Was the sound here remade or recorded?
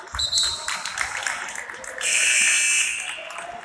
recorded